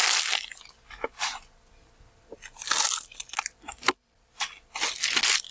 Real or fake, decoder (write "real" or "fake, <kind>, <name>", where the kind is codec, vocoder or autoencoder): real